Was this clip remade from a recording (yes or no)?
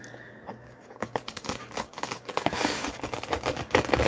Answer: yes